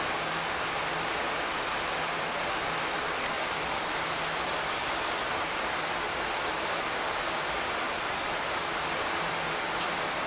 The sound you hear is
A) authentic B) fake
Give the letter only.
A